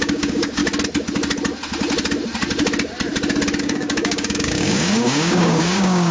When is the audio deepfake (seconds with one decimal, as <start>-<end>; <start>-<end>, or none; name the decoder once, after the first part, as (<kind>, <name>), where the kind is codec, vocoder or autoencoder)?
0.0-0.6 (codec, DAC); 3.6-6.1

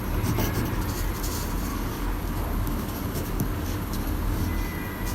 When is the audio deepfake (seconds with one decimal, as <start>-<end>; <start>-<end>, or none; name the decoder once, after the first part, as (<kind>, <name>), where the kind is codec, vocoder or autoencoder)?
1.7-4.4 (codec, DAC)

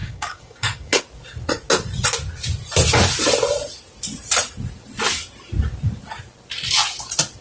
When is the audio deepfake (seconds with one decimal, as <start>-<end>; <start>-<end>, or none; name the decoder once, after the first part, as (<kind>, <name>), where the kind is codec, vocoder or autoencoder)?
0.0-1.0 (codec, DAC)

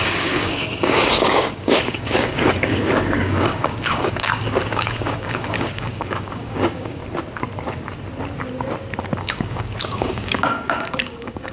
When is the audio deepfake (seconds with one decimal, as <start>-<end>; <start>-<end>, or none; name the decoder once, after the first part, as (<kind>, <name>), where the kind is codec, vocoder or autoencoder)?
0.0-7.0 (codec, DAC); 9.2-11.5

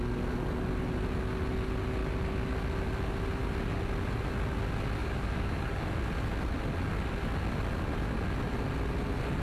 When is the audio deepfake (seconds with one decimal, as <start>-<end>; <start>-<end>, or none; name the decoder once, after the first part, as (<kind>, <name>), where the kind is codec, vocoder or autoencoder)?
5.0-5.8 (codec, DAC)

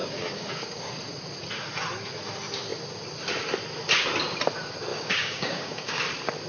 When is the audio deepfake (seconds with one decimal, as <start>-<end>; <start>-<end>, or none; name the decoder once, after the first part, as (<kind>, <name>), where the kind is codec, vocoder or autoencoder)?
0.0-0.8 (codec, DAC); 4.9-6.0